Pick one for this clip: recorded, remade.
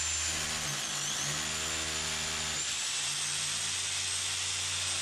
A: recorded